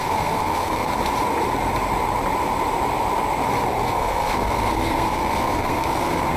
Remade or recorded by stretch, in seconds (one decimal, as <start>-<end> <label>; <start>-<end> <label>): 0.0-0.9 remade; 0.9-3.9 recorded; 3.9-6.4 remade